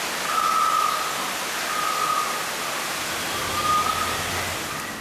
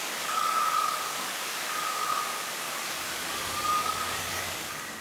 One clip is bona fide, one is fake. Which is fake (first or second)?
second